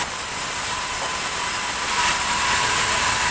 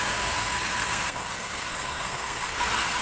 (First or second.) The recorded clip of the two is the first